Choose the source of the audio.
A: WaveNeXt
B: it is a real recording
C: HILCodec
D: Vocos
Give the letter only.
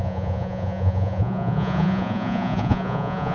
D